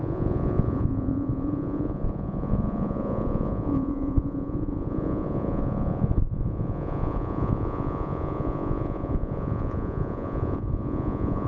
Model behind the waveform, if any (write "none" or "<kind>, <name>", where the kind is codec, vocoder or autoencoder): vocoder, Vocos